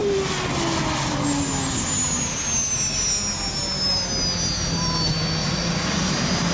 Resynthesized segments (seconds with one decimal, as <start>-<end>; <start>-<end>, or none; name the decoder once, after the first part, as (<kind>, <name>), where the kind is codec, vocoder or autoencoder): 5.4-6.0 (vocoder, Vocos)